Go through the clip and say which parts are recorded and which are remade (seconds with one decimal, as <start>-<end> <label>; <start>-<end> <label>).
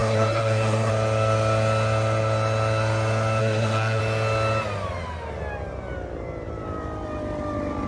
0.0-0.9 remade; 0.9-3.4 recorded; 3.4-4.0 remade; 4.0-7.9 recorded